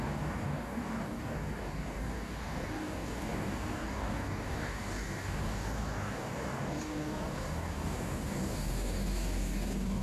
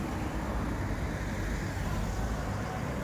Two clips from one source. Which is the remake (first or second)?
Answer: first